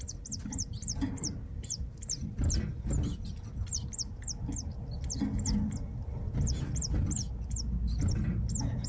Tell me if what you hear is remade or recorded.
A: recorded